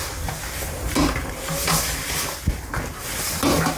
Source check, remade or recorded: recorded